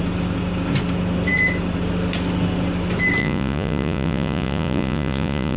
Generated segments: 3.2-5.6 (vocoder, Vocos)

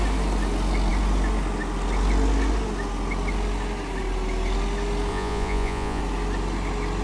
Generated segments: 5.1-6.0 (vocoder, Vocos)

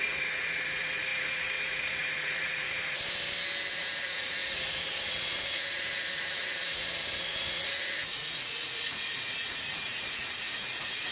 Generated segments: 0.0-3.0 (vocoder, Vocos); 3.7-11.1

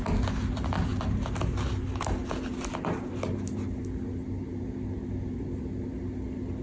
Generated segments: none

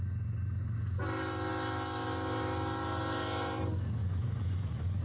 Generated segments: 4.0-5.0 (vocoder, Vocos)

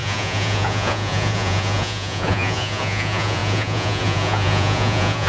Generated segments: 0.0-5.3 (vocoder, Vocos)

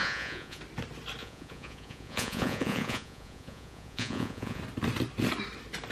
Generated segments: 0.0-0.6 (vocoder, Vocos); 1.2-4.6

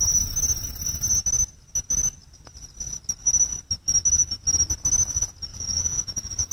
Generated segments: 5.5-6.5 (vocoder, Vocos)